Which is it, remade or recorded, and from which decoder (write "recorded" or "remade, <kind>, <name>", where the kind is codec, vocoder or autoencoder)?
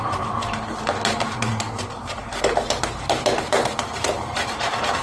remade, vocoder, BigVGAN v2